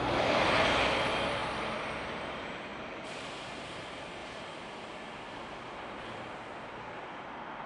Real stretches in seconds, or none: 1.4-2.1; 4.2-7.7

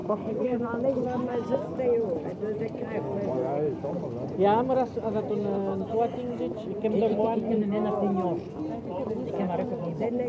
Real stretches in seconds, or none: 0.6-10.3